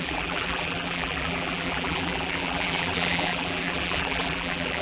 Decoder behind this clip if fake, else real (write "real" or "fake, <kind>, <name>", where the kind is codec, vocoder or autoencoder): fake, vocoder, BigVGAN v2